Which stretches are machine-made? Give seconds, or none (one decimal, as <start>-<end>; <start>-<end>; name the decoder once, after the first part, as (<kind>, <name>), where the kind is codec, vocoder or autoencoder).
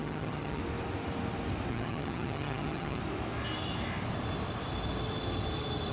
0.0-0.6 (vocoder, HiFi-GAN); 1.7-3.0